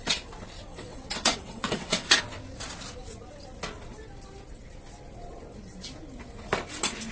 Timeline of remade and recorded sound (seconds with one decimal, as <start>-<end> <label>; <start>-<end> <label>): 0.0-0.7 recorded; 0.7-2.2 remade; 2.2-7.1 recorded